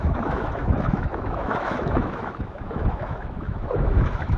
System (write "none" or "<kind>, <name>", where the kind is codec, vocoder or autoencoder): autoencoder, DAC-VAE